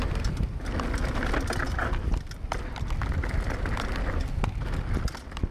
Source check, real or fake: real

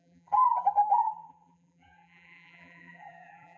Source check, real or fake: fake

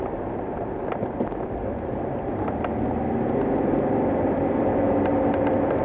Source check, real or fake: real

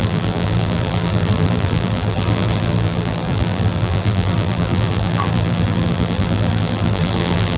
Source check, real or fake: fake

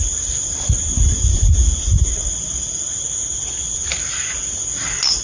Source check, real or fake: real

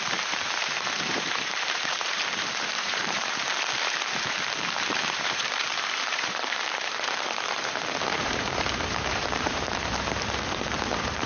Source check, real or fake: fake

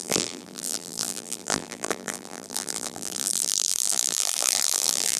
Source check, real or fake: fake